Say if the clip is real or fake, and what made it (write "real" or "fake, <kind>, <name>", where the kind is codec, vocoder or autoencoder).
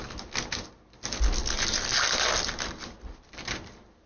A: real